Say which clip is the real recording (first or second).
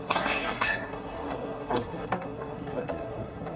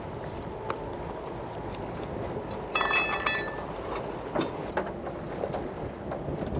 second